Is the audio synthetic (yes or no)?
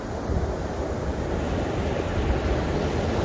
no